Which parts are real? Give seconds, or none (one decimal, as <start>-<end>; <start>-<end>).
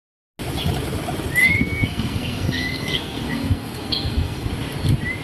0.0-1.4; 4.5-5.2